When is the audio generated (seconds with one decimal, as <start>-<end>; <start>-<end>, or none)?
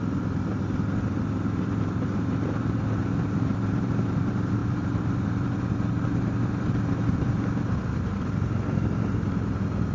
0.0-9.9